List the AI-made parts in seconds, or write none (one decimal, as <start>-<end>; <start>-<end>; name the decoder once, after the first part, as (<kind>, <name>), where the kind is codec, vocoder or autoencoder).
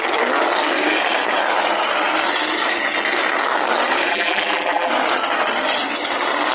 4.1-4.9 (vocoder, BigVGAN v2)